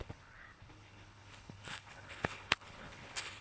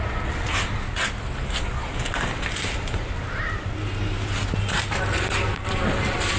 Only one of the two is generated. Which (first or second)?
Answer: first